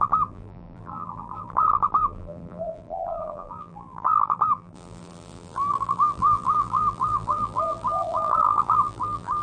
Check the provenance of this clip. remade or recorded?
remade